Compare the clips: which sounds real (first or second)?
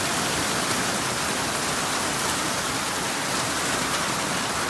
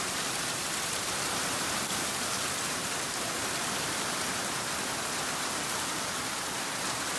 first